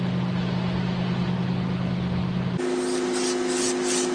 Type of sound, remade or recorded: recorded